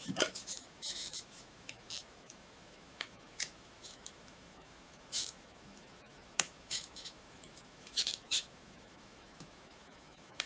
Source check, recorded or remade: remade